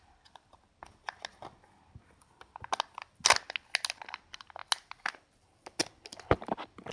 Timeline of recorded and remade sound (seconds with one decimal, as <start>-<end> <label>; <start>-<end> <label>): 0.0-6.9 recorded